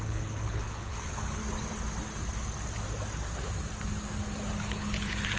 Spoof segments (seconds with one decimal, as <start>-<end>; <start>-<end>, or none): 0.0-1.4; 4.6-5.4